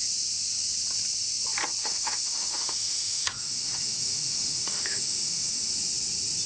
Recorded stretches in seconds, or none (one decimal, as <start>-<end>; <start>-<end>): 0.0-1.8; 5.7-6.5